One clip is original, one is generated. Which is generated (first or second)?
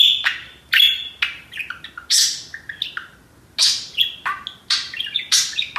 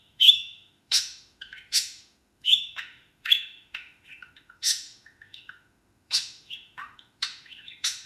second